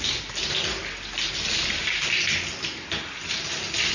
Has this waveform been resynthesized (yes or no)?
no